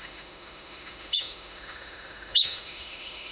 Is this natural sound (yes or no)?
no